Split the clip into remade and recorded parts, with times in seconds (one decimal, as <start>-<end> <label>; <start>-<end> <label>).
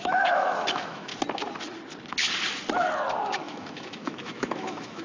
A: 0.0-1.1 remade; 1.1-3.2 recorded; 3.2-5.0 remade